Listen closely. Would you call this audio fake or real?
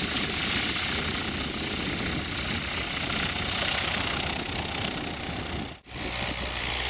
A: real